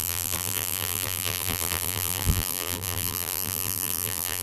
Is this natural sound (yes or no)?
no